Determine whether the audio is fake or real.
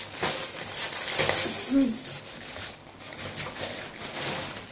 real